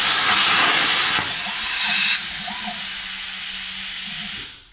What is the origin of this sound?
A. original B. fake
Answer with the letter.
A